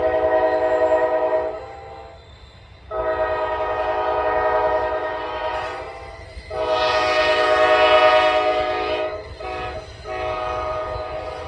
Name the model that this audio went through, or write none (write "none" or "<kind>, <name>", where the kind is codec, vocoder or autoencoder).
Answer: none